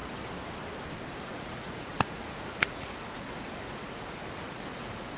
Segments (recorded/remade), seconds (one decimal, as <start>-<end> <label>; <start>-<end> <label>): 0.0-1.2 recorded; 1.2-5.2 remade